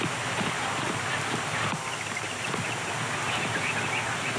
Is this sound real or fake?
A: real